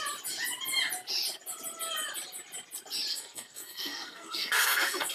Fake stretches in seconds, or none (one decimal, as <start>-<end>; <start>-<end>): 3.1-5.1